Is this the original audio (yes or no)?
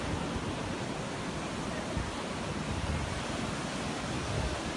yes